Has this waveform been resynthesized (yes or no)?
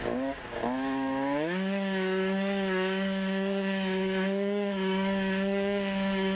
yes